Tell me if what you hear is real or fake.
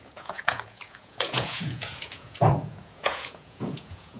fake